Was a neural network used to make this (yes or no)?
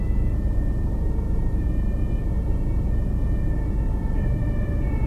yes